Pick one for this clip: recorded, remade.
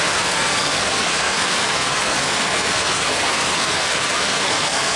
remade